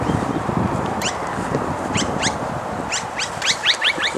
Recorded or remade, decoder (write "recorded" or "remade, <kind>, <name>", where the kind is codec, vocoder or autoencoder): recorded